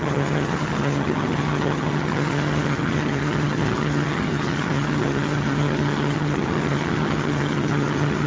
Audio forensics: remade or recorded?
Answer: remade